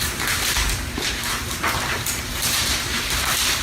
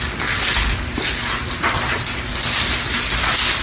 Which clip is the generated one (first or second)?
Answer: first